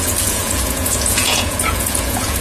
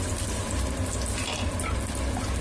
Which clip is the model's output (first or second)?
first